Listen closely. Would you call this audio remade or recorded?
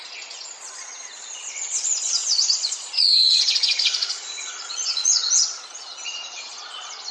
remade